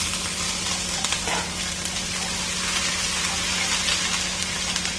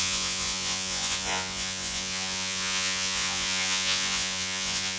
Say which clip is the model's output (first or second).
second